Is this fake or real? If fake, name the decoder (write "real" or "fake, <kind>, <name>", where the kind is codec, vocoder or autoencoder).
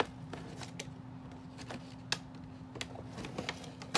real